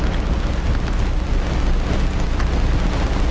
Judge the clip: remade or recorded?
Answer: recorded